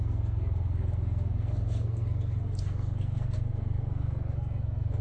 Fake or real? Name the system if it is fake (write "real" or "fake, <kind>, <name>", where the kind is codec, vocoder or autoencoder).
fake, codec, SNAC